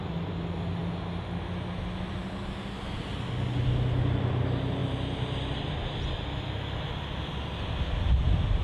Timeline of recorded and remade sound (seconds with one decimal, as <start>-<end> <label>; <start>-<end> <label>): 0.0-8.6 recorded